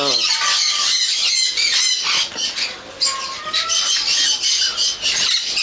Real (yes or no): yes